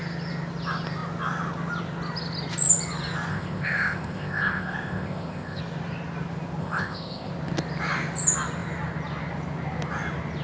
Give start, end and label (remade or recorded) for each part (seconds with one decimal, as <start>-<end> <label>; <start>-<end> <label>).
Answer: 0.0-3.3 recorded; 3.3-5.6 remade; 5.6-6.6 recorded; 6.6-7.3 remade; 7.3-10.4 recorded